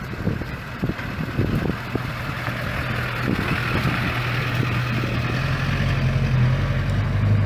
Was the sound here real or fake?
real